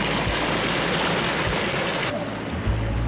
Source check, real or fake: real